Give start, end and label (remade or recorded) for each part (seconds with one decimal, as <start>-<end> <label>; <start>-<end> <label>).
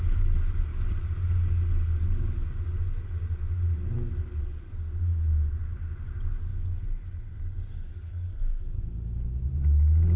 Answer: 0.0-7.9 recorded; 7.9-8.8 remade; 8.8-10.2 recorded